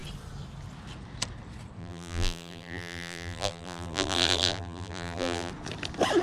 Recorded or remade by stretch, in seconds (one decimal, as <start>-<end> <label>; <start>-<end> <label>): 0.0-1.8 recorded; 1.8-5.5 remade; 5.5-6.2 recorded

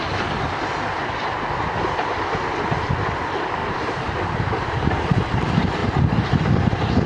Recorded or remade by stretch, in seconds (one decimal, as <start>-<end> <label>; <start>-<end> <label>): 0.0-3.6 recorded; 3.6-5.2 remade; 5.2-5.8 recorded; 5.8-6.6 remade; 6.6-7.1 recorded